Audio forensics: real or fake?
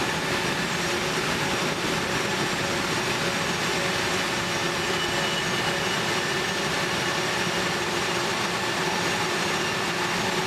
real